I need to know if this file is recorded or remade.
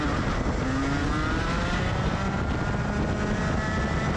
recorded